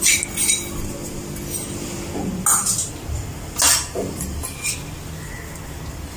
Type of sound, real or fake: real